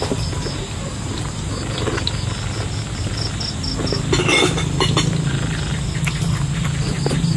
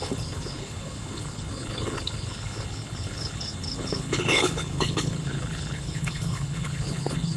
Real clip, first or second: first